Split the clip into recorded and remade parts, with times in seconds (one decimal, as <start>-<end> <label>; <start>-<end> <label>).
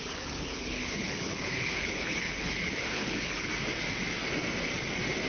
0.0-3.5 remade; 3.5-5.3 recorded